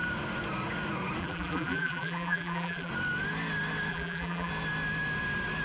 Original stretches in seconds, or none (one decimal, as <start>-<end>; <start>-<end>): 0.0-1.2; 2.9-3.9; 4.5-5.6

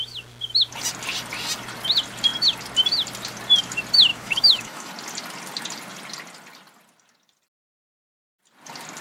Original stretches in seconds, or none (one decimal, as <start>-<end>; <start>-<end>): 0.0-4.1; 4.9-9.0

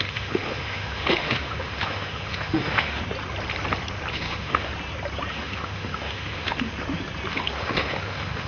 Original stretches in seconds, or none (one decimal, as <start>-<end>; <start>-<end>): 3.0-4.1; 4.7-5.3; 6.7-7.3

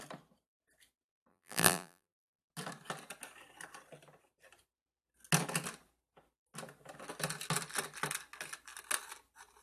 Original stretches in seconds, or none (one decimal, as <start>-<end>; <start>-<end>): 0.0-1.3; 2.4-9.6

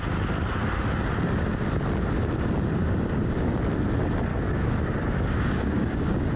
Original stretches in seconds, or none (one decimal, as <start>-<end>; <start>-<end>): 0.0-2.8; 3.5-4.3